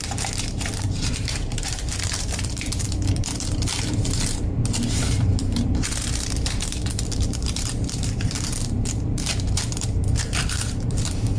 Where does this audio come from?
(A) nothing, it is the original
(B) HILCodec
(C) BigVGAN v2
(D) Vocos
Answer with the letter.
C